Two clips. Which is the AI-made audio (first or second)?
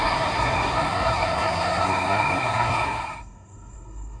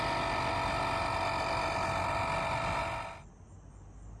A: first